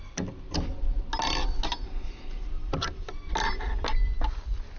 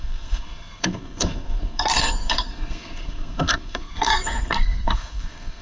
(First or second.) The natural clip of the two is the first